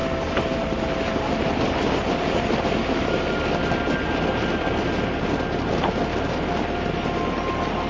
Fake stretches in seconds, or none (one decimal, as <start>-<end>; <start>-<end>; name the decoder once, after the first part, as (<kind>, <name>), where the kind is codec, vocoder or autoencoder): none